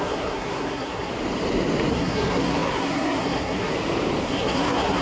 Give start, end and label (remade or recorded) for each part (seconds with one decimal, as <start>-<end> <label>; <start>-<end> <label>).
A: 0.0-1.1 remade; 1.1-1.9 recorded; 1.9-3.7 remade; 3.7-4.2 recorded; 4.2-5.0 remade